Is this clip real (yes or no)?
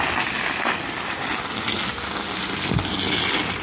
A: yes